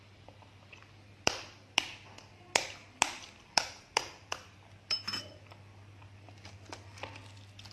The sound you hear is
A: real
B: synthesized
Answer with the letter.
B